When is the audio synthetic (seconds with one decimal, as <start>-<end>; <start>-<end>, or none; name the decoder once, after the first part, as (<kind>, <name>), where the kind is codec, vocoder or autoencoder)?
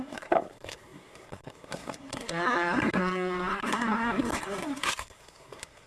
0.0-5.9 (codec, SNAC)